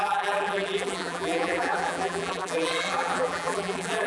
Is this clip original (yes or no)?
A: no